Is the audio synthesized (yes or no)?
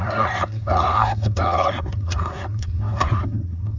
yes